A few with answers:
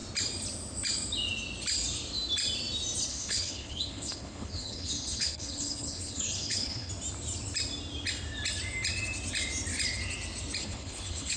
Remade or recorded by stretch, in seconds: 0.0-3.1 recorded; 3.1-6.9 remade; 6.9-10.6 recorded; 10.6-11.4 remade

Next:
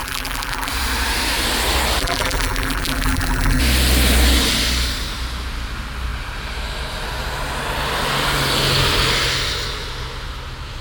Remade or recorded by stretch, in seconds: 0.0-0.7 remade; 0.7-2.0 recorded; 2.0-3.6 remade; 3.6-10.8 recorded

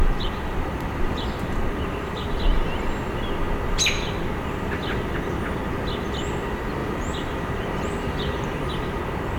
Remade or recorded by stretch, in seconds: 0.0-2.4 remade; 2.4-6.8 recorded; 6.8-9.0 remade; 9.0-9.4 recorded